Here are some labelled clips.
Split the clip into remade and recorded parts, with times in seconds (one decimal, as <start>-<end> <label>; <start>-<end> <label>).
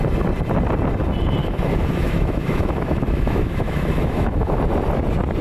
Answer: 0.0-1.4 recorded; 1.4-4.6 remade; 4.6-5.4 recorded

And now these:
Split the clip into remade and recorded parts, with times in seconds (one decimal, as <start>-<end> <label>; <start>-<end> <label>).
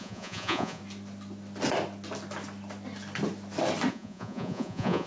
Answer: 0.0-0.8 remade; 0.8-3.9 recorded; 3.9-5.1 remade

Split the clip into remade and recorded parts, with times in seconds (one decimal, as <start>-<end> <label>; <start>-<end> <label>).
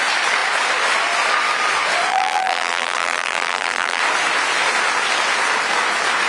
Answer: 0.0-2.1 recorded; 2.1-4.0 remade; 4.0-6.3 recorded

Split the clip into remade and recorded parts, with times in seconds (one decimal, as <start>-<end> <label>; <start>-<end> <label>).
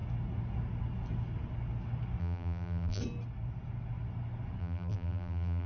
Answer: 0.0-2.2 recorded; 2.2-3.0 remade; 3.0-4.6 recorded; 4.6-5.7 remade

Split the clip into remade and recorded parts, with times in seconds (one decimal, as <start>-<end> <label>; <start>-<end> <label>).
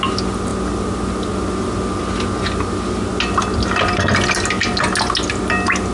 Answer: 0.0-5.9 recorded